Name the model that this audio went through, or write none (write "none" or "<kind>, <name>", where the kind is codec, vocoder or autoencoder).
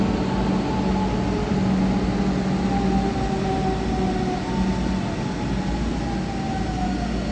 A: none